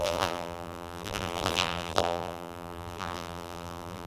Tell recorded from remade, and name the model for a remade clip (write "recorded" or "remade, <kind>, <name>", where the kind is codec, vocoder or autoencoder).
remade, vocoder, BigVGAN v2